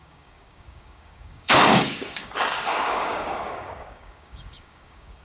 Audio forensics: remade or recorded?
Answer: remade